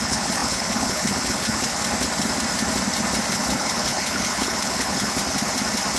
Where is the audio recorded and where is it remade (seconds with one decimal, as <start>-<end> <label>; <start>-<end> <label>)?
0.0-1.8 remade; 1.8-3.3 recorded; 3.3-5.2 remade; 5.2-6.0 recorded